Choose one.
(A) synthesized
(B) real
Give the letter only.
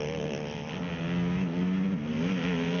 B